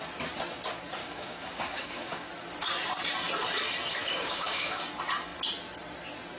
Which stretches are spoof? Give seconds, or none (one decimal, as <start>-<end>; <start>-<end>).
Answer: 1.0-2.3; 4.0-4.8